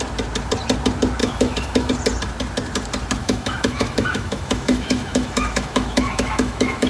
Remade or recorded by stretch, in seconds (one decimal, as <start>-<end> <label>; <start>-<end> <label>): 0.0-1.2 recorded; 1.2-1.9 remade; 1.9-3.2 recorded; 3.2-6.9 remade